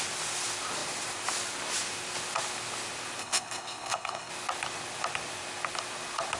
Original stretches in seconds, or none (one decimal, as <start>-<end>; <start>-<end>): 0.0-3.2; 4.3-6.4